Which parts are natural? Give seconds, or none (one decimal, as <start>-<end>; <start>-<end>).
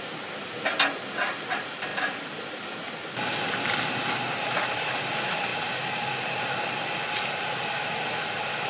0.0-8.7